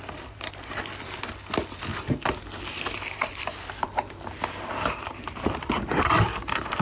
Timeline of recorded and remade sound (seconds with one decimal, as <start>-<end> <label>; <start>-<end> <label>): 0.0-1.9 remade; 1.9-2.6 recorded; 2.6-6.8 remade